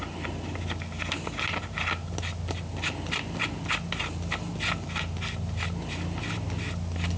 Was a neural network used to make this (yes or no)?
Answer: no